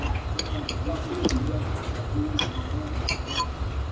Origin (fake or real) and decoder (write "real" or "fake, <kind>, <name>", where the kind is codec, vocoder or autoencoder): real